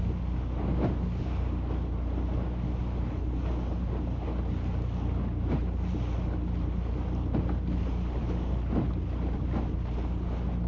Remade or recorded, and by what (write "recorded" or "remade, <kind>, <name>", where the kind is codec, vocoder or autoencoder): recorded